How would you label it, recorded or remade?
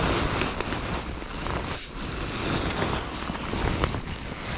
recorded